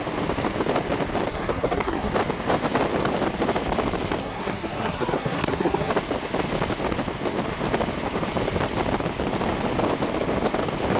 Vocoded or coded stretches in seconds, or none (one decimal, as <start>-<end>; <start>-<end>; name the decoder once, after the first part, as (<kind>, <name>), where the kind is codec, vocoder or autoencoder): 1.3-2.1 (codec, SNAC); 4.2-5.9